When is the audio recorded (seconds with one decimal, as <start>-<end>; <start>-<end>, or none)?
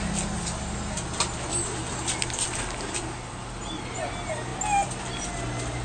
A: 0.0-5.8